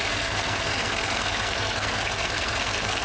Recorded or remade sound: remade